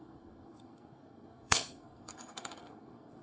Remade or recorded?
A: remade